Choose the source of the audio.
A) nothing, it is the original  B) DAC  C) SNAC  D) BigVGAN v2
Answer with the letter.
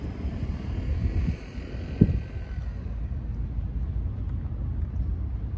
A